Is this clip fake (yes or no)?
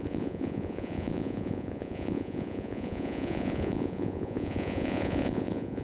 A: yes